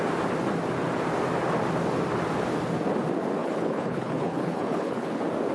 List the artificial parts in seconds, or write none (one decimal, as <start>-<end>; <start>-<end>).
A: 3.4-5.1